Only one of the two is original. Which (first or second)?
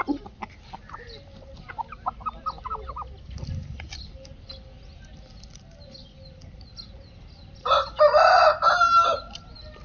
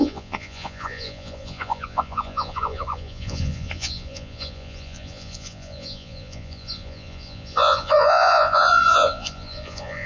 first